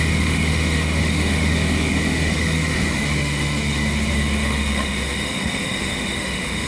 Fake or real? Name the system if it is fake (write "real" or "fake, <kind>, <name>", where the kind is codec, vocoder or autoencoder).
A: fake, autoencoder, DAC-VAE